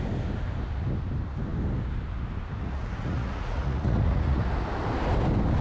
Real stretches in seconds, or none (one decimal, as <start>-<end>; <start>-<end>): 0.0-2.6; 4.5-5.6